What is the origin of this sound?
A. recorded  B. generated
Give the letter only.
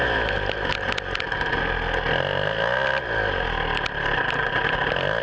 A